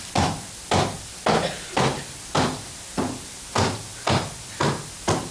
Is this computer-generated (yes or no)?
no